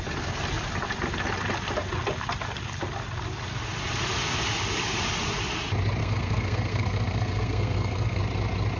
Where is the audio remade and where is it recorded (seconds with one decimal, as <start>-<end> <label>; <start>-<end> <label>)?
0.0-6.0 recorded; 6.0-8.2 remade; 8.2-8.8 recorded